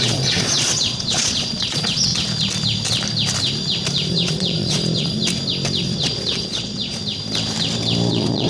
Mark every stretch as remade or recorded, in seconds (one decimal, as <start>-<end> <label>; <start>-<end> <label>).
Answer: 0.0-2.1 remade; 2.1-4.1 recorded; 4.1-5.2 remade; 5.2-5.8 recorded; 5.8-7.0 remade; 7.0-8.1 recorded; 8.1-8.5 remade

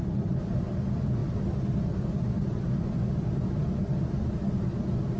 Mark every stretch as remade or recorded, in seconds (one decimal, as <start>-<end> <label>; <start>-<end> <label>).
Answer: 0.0-5.2 recorded

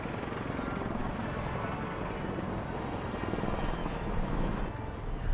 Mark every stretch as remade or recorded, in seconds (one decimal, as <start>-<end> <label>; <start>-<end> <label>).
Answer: 0.0-3.8 recorded; 3.8-4.6 remade; 4.6-5.3 recorded

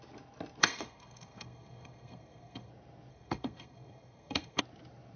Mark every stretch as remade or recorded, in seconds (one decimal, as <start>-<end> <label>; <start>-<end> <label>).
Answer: 0.0-0.6 recorded; 0.6-2.7 remade; 2.7-3.1 recorded; 3.1-4.6 remade; 4.6-5.2 recorded